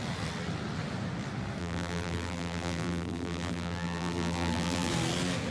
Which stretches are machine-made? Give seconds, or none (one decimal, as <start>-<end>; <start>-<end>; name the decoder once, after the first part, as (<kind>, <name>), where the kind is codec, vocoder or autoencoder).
1.6-4.9 (vocoder, BigVGAN v2)